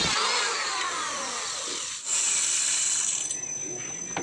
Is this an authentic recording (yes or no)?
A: yes